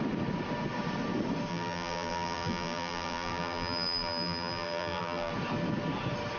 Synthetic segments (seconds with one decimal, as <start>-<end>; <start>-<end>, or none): 1.5-5.3